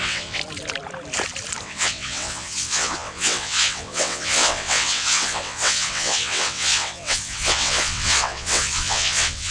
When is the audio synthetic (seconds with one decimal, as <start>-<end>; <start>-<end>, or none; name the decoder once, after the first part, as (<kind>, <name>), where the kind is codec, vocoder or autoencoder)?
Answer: 0.0-0.4 (vocoder, WaveNeXt); 1.6-9.5